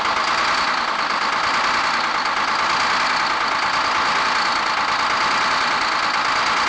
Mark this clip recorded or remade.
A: recorded